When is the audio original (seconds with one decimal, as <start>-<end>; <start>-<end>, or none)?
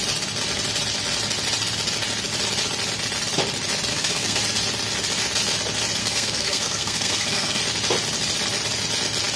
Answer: 0.0-3.9; 4.4-6.0; 7.6-9.4